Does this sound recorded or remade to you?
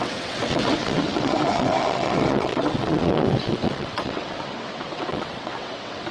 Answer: remade